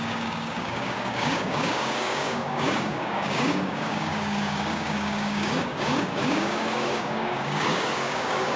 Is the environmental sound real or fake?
fake